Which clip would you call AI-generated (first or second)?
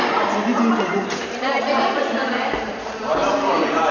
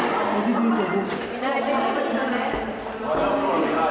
first